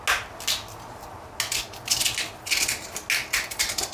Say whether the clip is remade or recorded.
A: recorded